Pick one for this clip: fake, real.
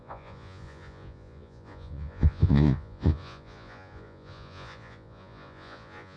fake